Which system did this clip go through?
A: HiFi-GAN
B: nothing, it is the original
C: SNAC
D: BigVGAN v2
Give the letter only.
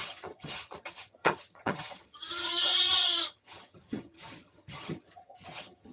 A